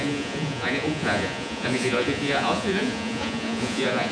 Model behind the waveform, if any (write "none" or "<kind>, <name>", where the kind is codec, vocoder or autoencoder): vocoder, Vocos